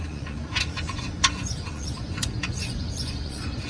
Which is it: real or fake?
fake